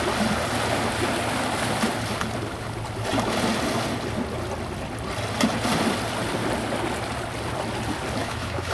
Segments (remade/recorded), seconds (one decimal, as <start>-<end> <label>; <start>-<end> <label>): 0.0-8.2 recorded; 8.2-8.7 remade